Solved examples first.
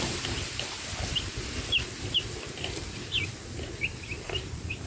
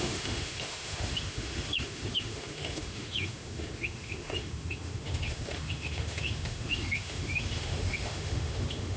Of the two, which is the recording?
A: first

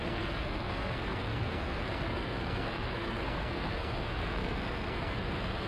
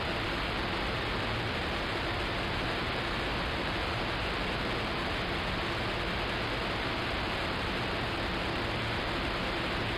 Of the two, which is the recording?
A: second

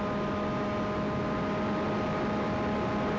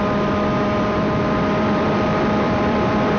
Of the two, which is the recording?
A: first